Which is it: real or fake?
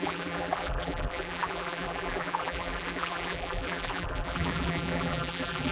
fake